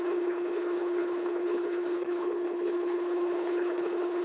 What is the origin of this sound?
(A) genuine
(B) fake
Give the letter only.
B